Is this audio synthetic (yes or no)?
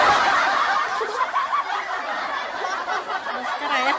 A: no